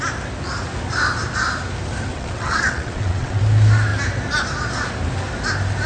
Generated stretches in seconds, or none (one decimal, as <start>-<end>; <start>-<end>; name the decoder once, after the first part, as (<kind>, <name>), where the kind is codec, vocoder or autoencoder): 2.1-3.4 (vocoder, WaveNeXt)